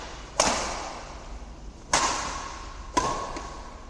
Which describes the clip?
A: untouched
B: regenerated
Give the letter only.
A